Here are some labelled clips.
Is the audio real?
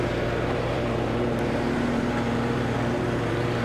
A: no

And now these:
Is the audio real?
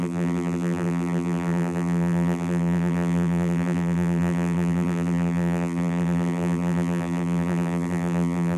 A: no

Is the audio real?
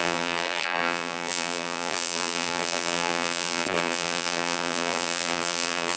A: no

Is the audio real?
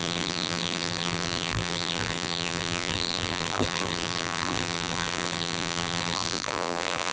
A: no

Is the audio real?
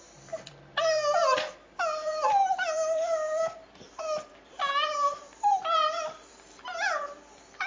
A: no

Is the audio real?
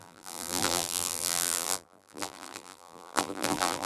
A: no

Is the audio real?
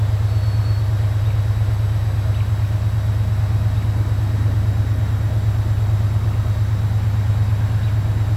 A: yes